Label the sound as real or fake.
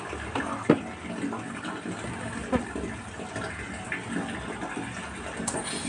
real